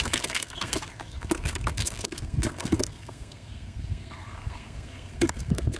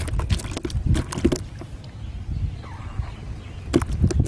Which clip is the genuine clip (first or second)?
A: second